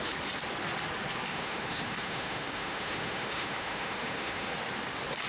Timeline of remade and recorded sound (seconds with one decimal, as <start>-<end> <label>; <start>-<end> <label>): 0.0-1.3 recorded; 1.3-4.5 remade; 4.5-5.3 recorded